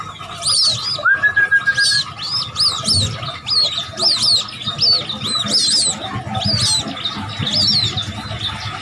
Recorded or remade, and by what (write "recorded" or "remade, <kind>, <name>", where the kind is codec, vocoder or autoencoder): recorded